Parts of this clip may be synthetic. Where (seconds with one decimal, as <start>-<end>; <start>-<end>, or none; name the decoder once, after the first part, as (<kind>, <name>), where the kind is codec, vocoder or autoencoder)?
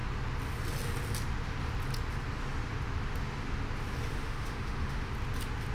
4.1-5.1 (autoencoder, DAC-VAE)